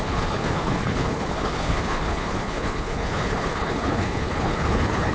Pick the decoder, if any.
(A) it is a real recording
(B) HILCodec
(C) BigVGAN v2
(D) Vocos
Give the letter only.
B